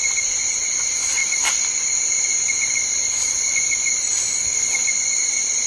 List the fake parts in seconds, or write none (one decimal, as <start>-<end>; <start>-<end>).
none